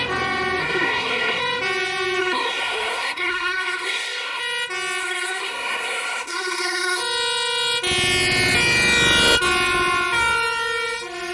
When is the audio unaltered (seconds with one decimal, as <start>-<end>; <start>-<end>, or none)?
0.0-0.6; 1.4-2.2; 4.4-5.0; 7.0-11.3